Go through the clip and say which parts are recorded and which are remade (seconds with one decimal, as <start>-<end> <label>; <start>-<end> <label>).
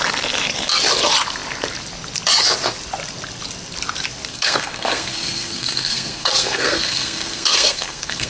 0.0-4.3 recorded; 4.3-8.3 remade